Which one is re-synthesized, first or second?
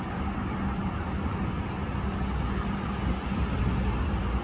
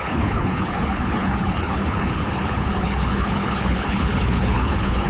second